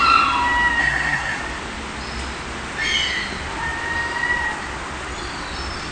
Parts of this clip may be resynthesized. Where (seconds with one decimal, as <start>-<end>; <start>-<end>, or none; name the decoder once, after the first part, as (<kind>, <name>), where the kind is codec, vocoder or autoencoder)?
0.8-1.4 (codec, SNAC)